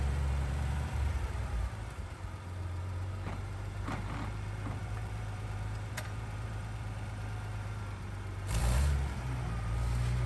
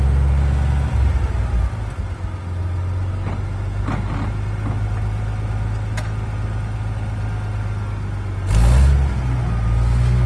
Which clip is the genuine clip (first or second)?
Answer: second